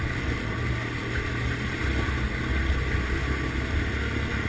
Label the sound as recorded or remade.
recorded